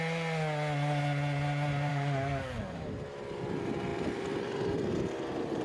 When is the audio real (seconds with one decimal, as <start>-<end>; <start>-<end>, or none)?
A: 0.0-1.9; 2.9-5.6